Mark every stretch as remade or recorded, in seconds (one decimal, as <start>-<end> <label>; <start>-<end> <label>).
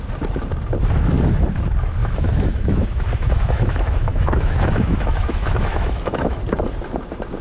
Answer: 0.0-2.0 recorded; 2.0-6.4 remade; 6.4-7.4 recorded